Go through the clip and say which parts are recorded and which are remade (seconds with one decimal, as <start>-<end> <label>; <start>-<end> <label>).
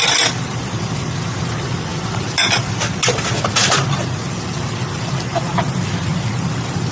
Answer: 0.0-1.4 remade; 1.4-1.9 recorded; 1.9-2.9 remade; 2.9-6.9 recorded